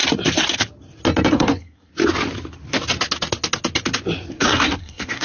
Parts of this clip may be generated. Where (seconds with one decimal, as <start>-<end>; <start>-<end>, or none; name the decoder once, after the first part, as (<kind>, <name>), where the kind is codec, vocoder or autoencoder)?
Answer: 1.3-1.9 (codec, SNAC); 4.3-5.2